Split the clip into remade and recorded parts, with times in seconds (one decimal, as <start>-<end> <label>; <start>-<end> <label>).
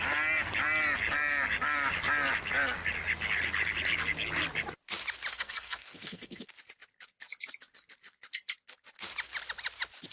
0.0-5.3 recorded; 5.3-6.5 remade; 6.5-10.1 recorded